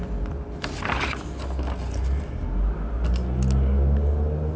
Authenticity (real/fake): real